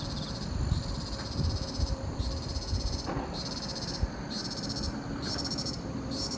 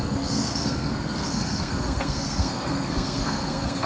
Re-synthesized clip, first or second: second